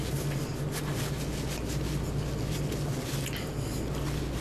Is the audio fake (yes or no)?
no